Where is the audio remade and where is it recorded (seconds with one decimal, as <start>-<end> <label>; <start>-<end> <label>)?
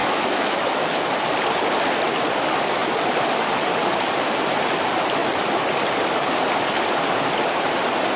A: 0.0-1.0 remade; 1.0-8.2 recorded